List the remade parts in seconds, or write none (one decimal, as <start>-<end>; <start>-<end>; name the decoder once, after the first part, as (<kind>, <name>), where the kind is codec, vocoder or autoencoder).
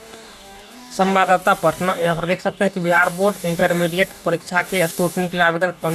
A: 0.0-1.3 (codec, DAC); 1.9-5.9